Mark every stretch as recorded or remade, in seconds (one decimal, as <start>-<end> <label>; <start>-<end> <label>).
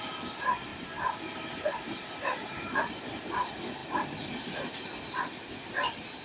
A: 0.0-0.7 recorded; 0.7-3.3 remade; 3.3-6.2 recorded